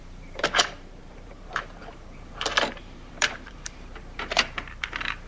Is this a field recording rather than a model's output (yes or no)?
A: no